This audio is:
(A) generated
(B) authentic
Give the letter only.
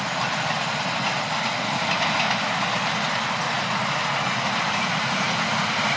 B